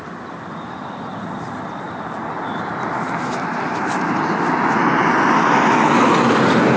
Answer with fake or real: real